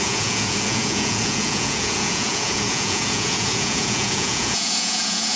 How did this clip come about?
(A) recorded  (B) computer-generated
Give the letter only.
B